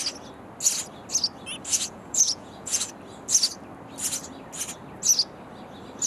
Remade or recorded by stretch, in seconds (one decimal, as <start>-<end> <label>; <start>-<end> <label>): 0.0-1.7 recorded; 1.7-2.8 remade; 2.8-6.1 recorded